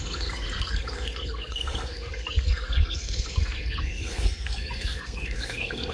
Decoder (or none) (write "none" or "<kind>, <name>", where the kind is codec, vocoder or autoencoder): codec, SNAC